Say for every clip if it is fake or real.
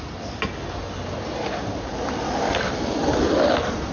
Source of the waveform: real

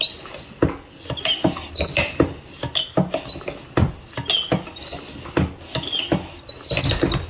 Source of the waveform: real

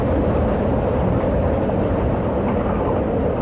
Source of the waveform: real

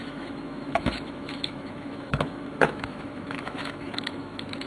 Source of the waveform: fake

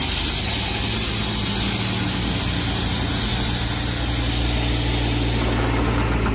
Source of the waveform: real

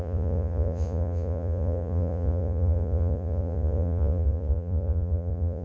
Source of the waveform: fake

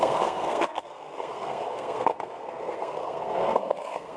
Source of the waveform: fake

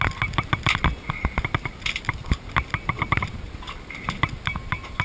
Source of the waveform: real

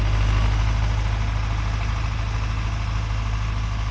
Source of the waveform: real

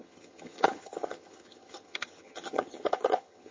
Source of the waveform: fake